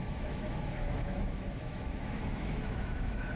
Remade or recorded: remade